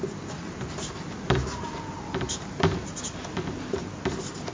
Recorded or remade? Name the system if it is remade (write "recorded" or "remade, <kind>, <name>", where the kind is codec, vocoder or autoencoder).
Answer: recorded